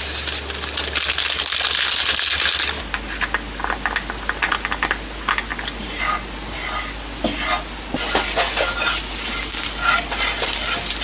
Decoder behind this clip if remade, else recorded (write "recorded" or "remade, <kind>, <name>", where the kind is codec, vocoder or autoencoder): recorded